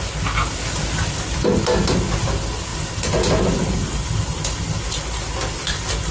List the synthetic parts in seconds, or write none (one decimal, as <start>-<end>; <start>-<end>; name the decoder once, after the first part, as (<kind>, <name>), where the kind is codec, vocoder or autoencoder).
none